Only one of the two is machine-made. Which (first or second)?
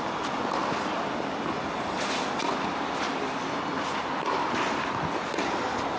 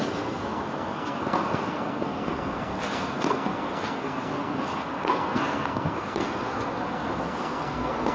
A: second